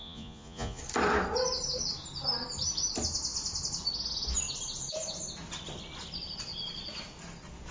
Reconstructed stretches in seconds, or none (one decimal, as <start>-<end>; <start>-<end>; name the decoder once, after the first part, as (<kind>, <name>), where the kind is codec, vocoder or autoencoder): 0.0-0.8 (vocoder, Vocos)